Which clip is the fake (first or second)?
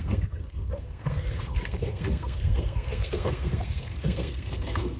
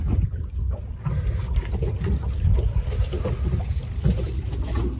first